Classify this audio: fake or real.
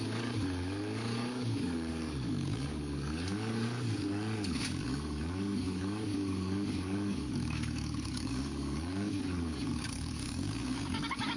fake